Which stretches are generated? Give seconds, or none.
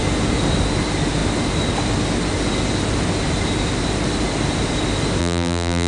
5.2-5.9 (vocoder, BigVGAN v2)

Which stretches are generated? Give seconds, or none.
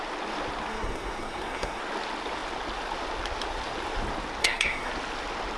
0.7-1.8 (codec, SNAC); 4.4-4.9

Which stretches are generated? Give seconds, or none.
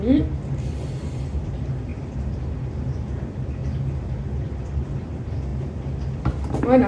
0.0-1.9 (vocoder, BigVGAN v2); 2.5-3.6; 4.6-5.5; 6.2-6.9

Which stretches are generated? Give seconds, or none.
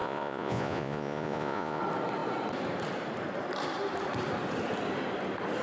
0.0-1.8 (vocoder, Vocos)